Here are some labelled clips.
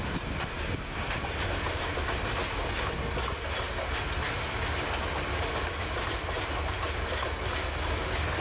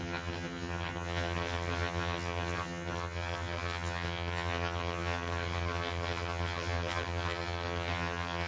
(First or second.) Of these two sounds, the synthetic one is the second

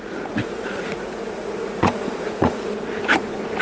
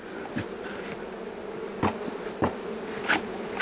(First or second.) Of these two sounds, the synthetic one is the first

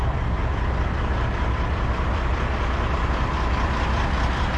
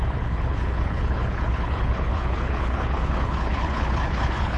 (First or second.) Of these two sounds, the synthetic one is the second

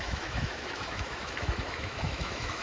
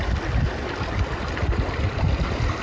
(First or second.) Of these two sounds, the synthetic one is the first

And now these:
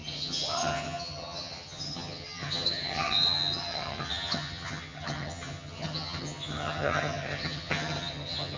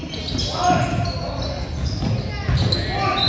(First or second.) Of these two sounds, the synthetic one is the first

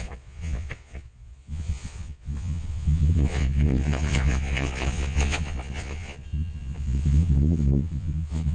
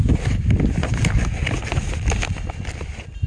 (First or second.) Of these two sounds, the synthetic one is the first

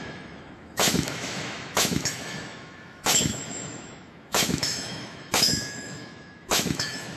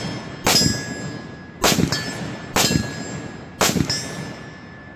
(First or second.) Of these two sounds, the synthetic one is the first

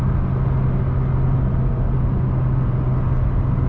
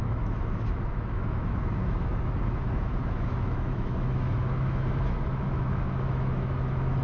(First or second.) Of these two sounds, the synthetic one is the second